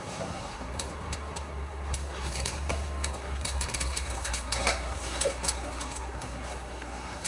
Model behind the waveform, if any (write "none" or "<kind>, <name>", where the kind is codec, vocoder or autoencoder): codec, SNAC